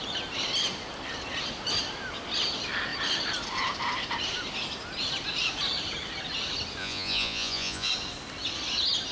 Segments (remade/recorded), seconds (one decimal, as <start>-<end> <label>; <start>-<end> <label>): 0.0-6.8 recorded; 6.8-7.9 remade; 7.9-9.1 recorded